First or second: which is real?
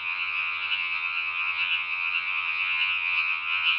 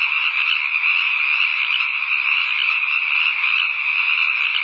second